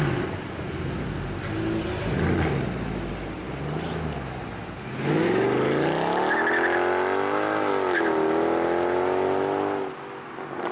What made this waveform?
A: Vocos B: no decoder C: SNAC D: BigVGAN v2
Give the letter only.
B